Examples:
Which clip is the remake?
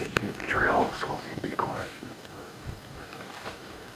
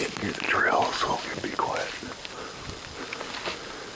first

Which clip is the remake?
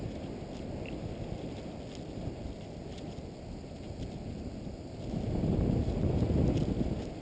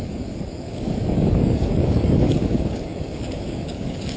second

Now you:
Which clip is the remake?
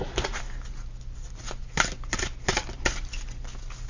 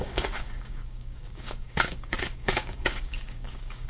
second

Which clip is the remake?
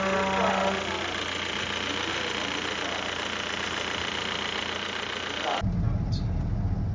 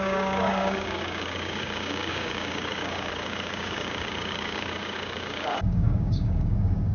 second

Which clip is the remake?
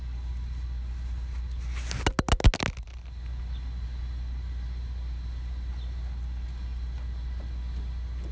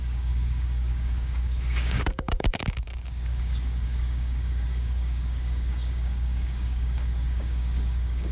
second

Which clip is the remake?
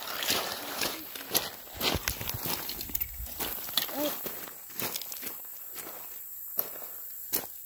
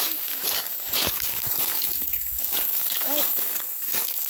second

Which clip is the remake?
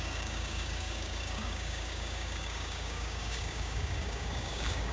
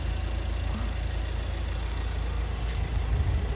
first